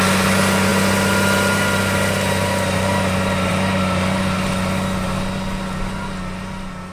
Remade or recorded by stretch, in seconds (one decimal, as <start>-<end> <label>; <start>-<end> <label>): 0.0-6.9 recorded